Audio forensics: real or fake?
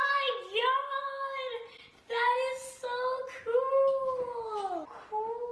real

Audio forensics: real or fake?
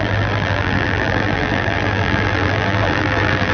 fake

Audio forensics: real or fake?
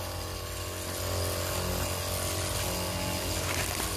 real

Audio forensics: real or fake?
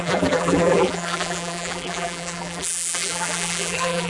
fake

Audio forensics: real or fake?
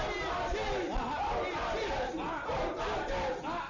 real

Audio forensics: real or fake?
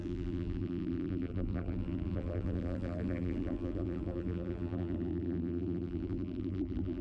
fake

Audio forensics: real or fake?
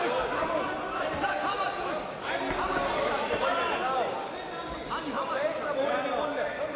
real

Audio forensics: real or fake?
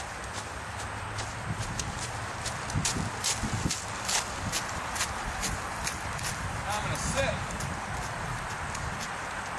fake